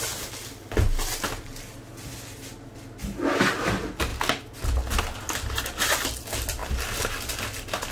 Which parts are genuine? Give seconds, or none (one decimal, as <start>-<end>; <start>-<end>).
0.0-7.9